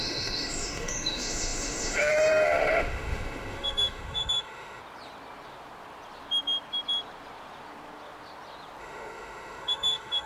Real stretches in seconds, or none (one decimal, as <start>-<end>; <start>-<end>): 4.8-8.8